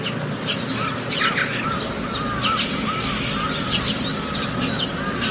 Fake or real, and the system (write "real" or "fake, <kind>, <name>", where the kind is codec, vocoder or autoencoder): real